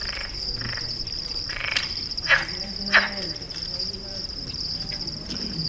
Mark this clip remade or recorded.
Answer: remade